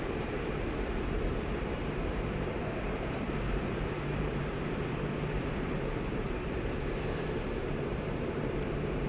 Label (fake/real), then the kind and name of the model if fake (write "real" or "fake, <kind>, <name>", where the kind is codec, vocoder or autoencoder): fake, vocoder, BigVGAN v2